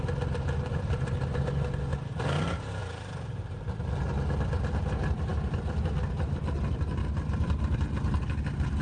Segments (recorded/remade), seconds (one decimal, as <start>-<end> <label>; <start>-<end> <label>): 0.0-1.9 recorded; 1.9-2.8 remade; 2.8-7.0 recorded; 7.0-7.6 remade; 7.6-8.8 recorded

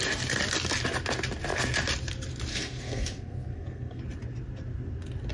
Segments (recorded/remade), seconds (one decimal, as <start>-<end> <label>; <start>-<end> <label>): 0.0-2.5 recorded; 2.5-4.0 remade; 4.0-5.3 recorded

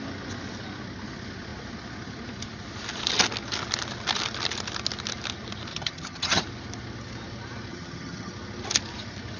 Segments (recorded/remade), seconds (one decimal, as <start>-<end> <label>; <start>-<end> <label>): 0.0-5.7 recorded; 5.7-6.4 remade; 6.4-7.7 recorded; 7.7-8.3 remade; 8.3-9.4 recorded

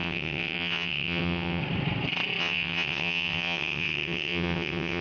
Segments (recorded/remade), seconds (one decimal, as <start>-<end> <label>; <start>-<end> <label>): 0.0-1.6 remade; 1.6-2.4 recorded; 2.4-5.0 remade

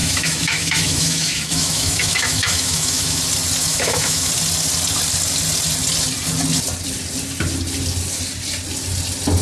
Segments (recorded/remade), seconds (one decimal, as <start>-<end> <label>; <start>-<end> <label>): 0.0-3.2 remade; 3.2-3.7 recorded; 3.7-4.3 remade; 4.3-9.4 recorded

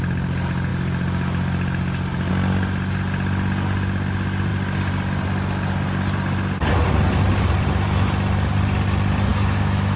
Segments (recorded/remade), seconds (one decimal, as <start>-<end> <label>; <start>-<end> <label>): 0.0-9.3 recorded; 9.3-10.0 remade

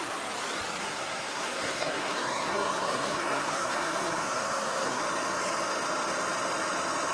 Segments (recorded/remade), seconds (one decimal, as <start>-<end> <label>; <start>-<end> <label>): 0.0-0.8 recorded; 0.8-5.0 remade; 5.0-7.1 recorded

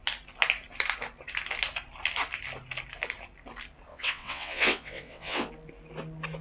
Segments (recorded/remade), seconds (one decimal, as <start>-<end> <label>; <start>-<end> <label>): 0.0-3.9 recorded; 3.9-5.5 remade; 5.5-6.4 recorded